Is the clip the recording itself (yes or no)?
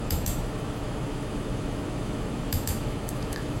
no